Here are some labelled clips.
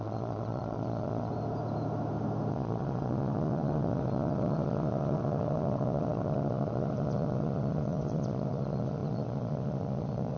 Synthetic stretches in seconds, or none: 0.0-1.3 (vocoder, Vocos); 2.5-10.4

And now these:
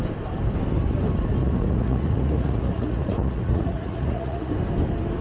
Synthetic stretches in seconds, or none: 1.4-4.5 (vocoder, Vocos)

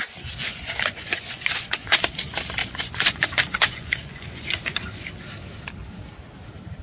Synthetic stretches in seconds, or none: 0.4-2.0 (vocoder, Vocos); 2.6-5.1

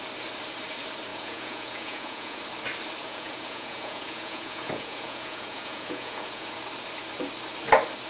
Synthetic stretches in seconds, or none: 1.1-2.4 (vocoder, Vocos); 3.0-6.6